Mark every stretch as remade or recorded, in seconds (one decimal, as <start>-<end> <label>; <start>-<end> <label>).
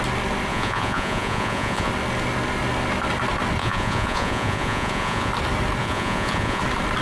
0.0-0.5 recorded; 0.5-1.9 remade; 1.9-3.6 recorded; 3.6-5.3 remade; 5.3-5.8 recorded; 5.8-6.6 remade; 6.6-7.0 recorded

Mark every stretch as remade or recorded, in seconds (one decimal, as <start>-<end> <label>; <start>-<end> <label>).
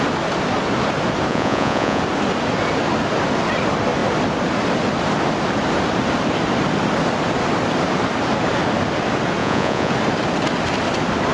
0.0-1.3 recorded; 1.3-2.0 remade; 2.0-9.4 recorded; 9.4-9.9 remade; 9.9-11.3 recorded